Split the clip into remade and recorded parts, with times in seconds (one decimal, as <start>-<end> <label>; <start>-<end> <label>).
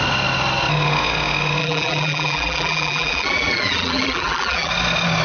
0.0-1.6 recorded; 1.6-4.7 remade; 4.7-5.2 recorded